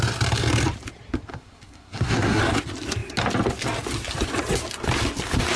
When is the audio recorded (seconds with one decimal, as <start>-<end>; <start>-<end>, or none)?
0.0-1.3; 2.4-5.6